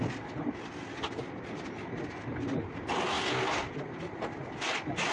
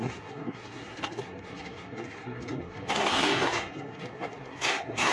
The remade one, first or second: second